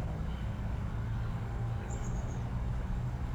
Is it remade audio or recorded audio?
remade